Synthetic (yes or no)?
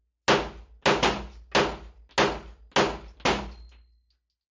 no